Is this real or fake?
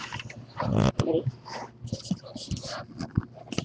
real